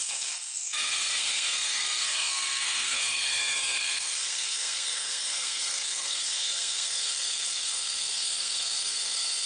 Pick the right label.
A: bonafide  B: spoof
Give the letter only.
B